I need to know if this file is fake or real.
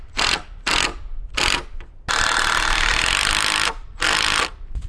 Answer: real